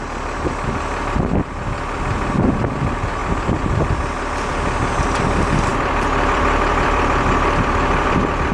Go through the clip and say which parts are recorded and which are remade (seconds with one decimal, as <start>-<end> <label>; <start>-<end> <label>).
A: 0.0-3.2 recorded; 3.2-3.8 remade; 3.8-5.7 recorded; 5.7-8.5 remade